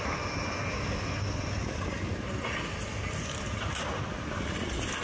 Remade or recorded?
recorded